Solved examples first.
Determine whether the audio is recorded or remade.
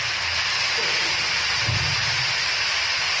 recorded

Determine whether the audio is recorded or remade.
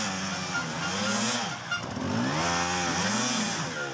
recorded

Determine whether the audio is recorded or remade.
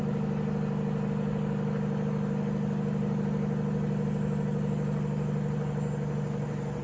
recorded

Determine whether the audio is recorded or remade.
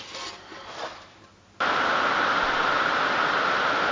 recorded